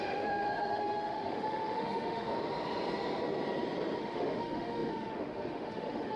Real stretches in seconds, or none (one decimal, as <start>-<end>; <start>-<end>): 2.3-4.0